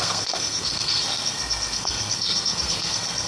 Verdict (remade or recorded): remade